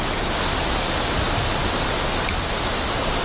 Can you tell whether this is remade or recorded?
recorded